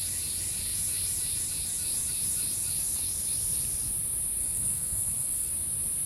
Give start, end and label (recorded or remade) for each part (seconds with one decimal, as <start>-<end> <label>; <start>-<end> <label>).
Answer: 0.0-4.4 recorded; 4.4-5.5 remade; 5.5-6.1 recorded